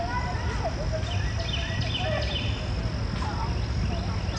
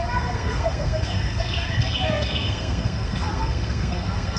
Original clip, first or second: first